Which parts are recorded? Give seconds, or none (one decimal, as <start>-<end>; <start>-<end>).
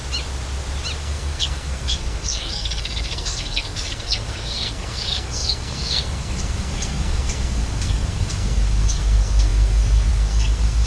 0.0-1.0